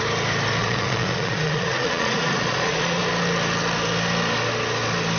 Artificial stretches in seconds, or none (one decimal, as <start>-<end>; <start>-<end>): 0.6-3.0